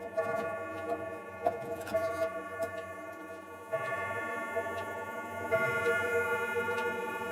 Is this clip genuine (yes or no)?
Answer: no